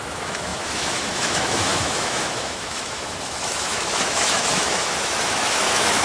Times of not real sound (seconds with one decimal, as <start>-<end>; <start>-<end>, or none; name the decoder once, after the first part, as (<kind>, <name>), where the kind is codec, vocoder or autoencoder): 0.0-6.0 (autoencoder, DAC-VAE)